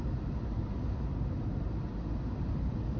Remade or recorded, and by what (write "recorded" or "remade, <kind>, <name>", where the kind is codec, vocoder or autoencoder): recorded